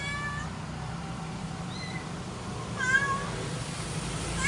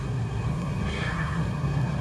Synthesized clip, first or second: second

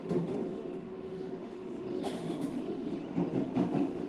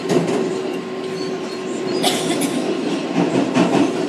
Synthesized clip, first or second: first